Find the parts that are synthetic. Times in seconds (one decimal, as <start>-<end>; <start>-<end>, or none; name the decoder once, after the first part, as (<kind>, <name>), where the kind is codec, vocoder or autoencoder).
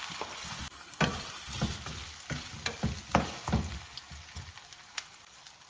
none